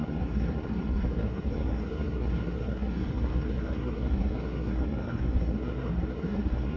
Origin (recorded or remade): remade